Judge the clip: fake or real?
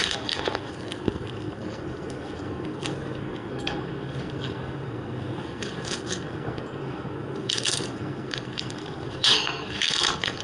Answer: fake